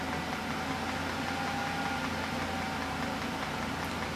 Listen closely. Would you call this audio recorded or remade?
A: recorded